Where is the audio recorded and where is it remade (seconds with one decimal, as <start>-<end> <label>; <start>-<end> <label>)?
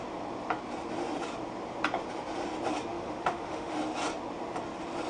0.0-2.9 recorded; 2.9-3.8 remade; 3.8-5.1 recorded